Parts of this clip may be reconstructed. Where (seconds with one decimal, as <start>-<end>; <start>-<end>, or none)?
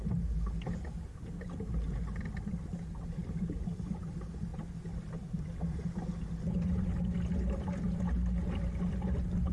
none